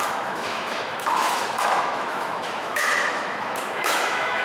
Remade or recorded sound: remade